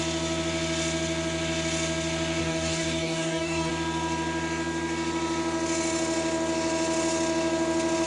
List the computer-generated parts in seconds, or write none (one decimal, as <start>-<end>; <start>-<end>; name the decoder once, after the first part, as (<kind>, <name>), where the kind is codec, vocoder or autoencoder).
2.4-3.7 (codec, DAC)